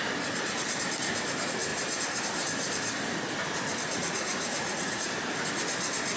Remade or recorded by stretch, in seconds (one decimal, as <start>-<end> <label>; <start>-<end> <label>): 0.0-4.0 recorded; 4.0-5.1 remade; 5.1-6.2 recorded

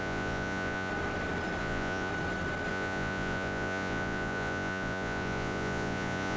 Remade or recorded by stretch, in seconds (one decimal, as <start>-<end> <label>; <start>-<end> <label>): 0.0-0.9 remade; 0.9-1.6 recorded; 1.6-2.1 remade; 2.1-2.7 recorded; 2.7-6.4 remade

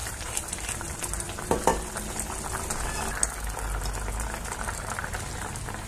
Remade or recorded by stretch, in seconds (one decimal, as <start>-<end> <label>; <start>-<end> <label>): 0.0-0.5 remade; 0.5-5.9 recorded

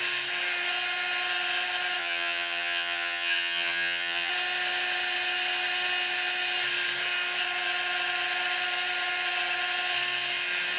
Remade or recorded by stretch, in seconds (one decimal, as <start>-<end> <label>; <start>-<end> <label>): 0.0-2.0 recorded; 2.0-4.3 remade; 4.3-10.8 recorded

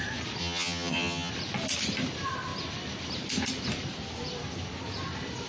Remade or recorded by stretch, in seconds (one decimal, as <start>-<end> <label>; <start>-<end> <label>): 0.0-0.4 recorded; 0.4-1.3 remade; 1.3-5.5 recorded